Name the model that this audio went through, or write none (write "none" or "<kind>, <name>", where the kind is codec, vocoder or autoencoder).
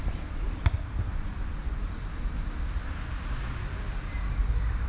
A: none